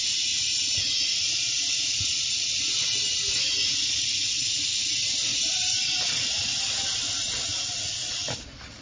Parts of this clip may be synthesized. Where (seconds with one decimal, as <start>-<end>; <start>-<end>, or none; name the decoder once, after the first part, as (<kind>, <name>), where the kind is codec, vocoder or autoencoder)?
1.1-4.2 (vocoder, BigVGAN v2); 5.3-7.3